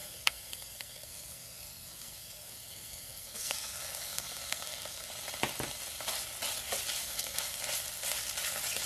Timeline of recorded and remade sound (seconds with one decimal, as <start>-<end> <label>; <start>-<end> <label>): 0.0-5.1 remade; 5.1-7.0 recorded; 7.0-7.6 remade; 7.6-8.9 recorded